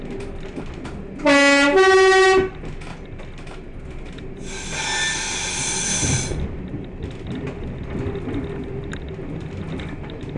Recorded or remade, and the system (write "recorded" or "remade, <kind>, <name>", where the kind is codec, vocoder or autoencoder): recorded